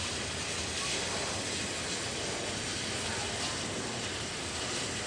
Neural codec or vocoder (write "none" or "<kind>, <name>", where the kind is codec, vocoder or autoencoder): none